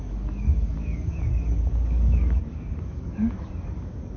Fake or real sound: fake